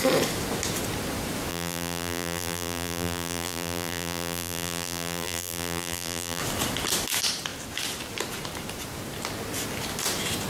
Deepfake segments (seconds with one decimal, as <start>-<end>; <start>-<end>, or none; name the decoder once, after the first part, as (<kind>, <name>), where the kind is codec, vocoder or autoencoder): 1.5-6.4 (vocoder, BigVGAN v2)